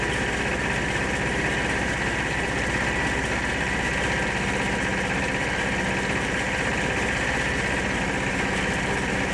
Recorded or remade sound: recorded